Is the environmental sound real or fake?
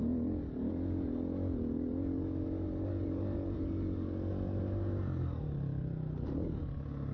real